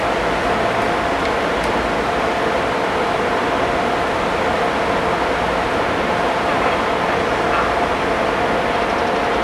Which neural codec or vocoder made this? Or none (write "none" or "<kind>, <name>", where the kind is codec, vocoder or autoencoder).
none